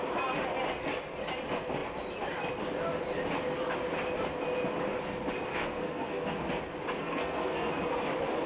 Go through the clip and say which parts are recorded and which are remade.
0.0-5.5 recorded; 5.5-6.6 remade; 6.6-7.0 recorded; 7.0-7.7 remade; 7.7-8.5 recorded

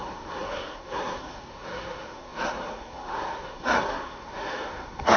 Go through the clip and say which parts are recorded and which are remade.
0.0-5.2 remade

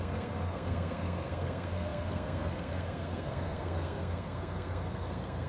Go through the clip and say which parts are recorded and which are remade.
0.0-5.5 remade

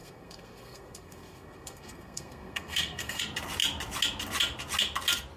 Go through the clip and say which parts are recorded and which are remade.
0.0-3.2 remade; 3.2-5.4 recorded

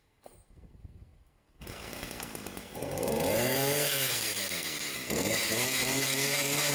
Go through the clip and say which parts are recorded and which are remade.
0.0-6.7 remade

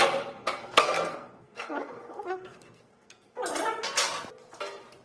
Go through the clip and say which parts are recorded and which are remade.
0.0-0.4 recorded; 0.4-3.4 remade; 3.4-5.0 recorded